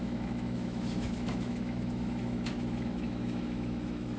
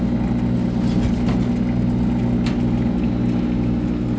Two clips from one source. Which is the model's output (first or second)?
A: first